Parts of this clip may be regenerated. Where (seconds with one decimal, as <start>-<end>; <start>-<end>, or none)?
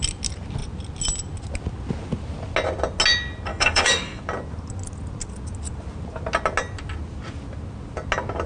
3.5-4.2